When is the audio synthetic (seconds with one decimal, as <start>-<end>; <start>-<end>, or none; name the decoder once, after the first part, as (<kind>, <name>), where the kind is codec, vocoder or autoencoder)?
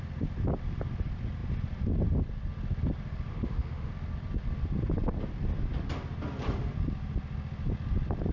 3.3-3.9 (autoencoder, DAC-VAE)